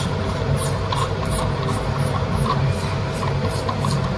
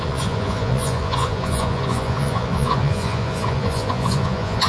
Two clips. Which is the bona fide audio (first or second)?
first